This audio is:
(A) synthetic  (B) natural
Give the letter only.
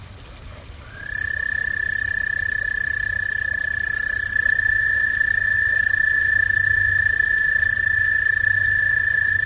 B